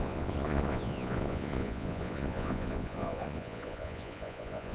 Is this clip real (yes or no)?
no